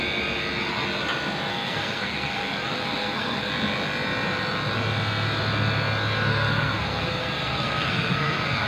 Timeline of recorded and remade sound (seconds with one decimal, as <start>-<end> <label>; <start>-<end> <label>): 0.0-1.5 recorded; 1.5-3.5 remade; 3.5-6.3 recorded; 6.3-8.7 remade